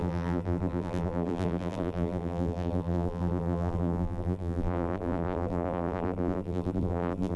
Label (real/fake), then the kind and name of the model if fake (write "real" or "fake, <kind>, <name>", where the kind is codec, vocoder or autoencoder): fake, vocoder, BigVGAN v2